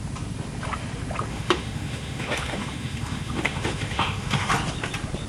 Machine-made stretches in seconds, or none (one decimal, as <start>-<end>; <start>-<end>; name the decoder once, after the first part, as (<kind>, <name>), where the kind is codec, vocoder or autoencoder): 1.3-4.5 (autoencoder, DAC-VAE)